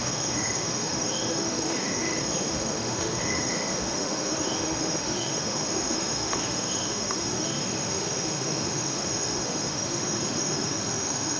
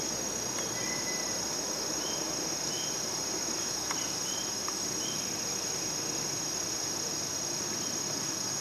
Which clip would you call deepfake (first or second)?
first